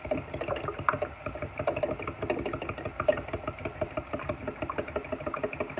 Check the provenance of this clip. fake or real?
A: real